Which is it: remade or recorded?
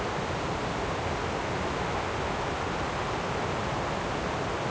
recorded